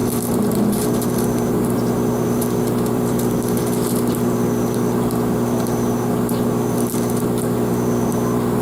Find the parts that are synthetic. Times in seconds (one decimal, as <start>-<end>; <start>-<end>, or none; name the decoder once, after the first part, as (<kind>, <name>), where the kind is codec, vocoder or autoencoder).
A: 0.0-3.6 (vocoder, BigVGAN v2)